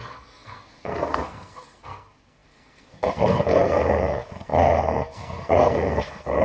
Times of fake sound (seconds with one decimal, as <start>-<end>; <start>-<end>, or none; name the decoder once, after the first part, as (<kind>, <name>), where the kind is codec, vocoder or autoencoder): 0.0-6.4 (codec, SNAC)